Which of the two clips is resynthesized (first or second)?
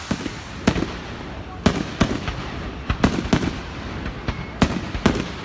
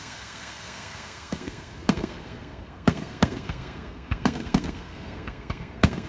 second